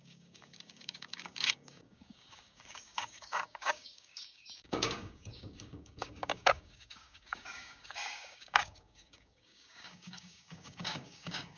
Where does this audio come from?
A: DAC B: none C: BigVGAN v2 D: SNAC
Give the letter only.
A